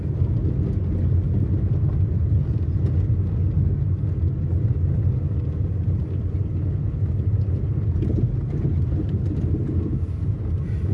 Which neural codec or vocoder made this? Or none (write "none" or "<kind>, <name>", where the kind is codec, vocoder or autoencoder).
none